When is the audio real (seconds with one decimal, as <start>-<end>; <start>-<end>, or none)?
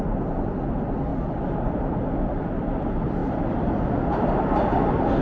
0.0-1.1; 2.2-3.2; 4.3-5.2